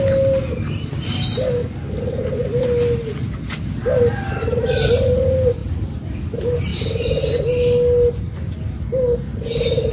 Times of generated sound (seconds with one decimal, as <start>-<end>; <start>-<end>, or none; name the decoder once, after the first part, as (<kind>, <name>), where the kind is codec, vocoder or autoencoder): none